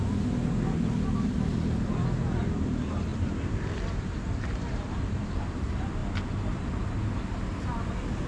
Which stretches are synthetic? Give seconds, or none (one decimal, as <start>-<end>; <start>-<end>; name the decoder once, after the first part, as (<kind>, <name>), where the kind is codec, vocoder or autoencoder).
3.1-5.4 (vocoder, BigVGAN v2)